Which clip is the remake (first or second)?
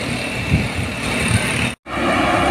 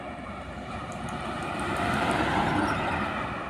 second